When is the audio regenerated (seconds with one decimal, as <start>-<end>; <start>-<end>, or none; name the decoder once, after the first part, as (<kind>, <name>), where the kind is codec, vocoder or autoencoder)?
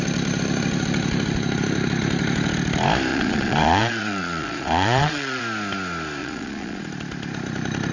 3.1-5.4 (vocoder, Vocos); 6.2-6.8